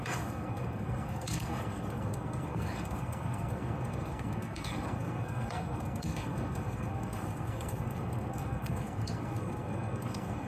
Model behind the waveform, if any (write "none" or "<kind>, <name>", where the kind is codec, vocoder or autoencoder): codec, SNAC